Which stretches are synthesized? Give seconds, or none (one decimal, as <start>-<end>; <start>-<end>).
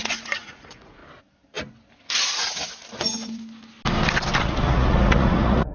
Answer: 0.0-1.0; 4.4-5.7